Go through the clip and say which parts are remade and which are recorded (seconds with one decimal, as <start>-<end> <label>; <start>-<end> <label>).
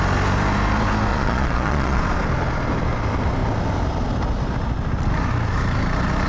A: 0.0-1.1 recorded; 1.1-2.0 remade; 2.0-6.3 recorded